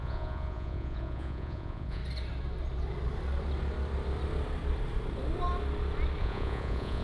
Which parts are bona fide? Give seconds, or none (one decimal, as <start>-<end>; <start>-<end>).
2.0-6.2